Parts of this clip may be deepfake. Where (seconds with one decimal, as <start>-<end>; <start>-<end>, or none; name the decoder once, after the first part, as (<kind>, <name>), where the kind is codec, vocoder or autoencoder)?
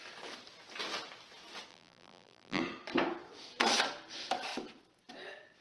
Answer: 1.7-2.6 (vocoder, BigVGAN v2)